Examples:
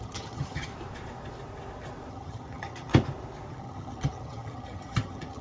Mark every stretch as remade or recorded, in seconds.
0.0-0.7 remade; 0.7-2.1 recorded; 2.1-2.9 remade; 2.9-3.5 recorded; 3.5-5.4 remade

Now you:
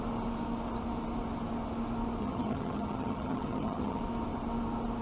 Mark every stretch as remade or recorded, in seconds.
0.0-2.2 recorded; 2.2-4.0 remade; 4.0-5.0 recorded

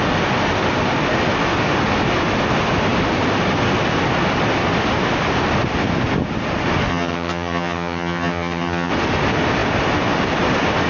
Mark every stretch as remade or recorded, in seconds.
0.0-6.9 recorded; 6.9-8.9 remade; 8.9-10.9 recorded

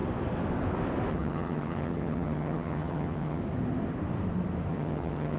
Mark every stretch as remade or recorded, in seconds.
0.0-1.1 recorded; 1.1-3.4 remade; 3.4-4.7 recorded; 4.7-5.4 remade

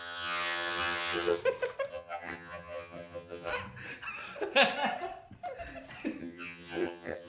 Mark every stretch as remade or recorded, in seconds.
0.0-1.4 remade; 1.4-1.9 recorded; 1.9-3.5 remade; 3.5-6.2 recorded; 6.2-7.3 remade

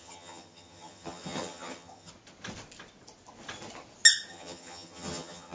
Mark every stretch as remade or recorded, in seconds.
0.0-2.1 remade; 2.1-4.3 recorded; 4.3-5.5 remade